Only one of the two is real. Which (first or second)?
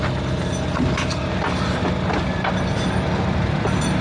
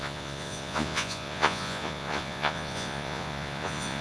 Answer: first